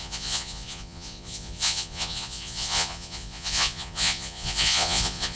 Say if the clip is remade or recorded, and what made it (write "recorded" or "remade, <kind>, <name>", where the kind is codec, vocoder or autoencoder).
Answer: remade, vocoder, Vocos